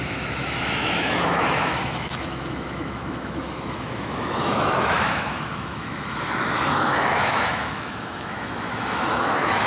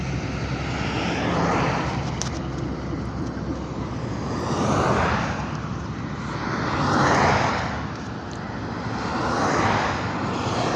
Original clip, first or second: second